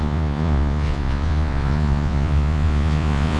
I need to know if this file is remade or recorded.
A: remade